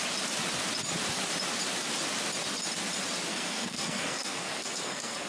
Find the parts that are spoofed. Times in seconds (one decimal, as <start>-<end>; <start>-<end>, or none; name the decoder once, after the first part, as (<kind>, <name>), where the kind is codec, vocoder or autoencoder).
3.3-5.3 (codec, SNAC)